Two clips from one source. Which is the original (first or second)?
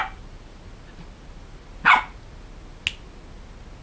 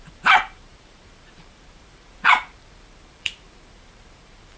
first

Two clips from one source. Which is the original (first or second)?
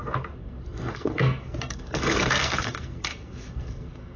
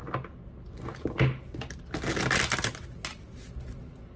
second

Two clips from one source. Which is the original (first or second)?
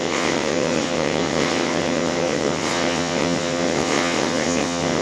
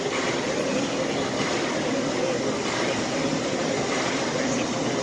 second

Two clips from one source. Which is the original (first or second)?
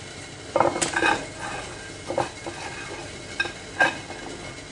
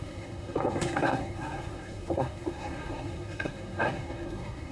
first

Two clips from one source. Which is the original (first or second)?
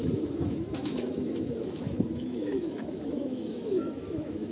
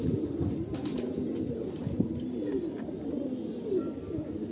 second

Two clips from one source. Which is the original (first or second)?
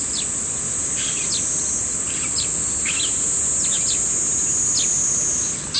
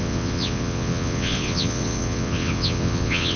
first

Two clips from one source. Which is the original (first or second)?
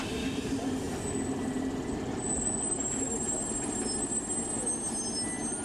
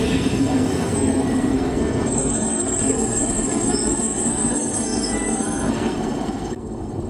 first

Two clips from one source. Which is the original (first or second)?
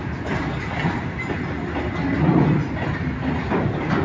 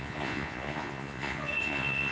first